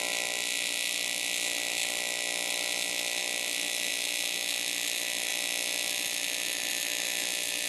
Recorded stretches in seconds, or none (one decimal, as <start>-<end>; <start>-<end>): 0.0-7.7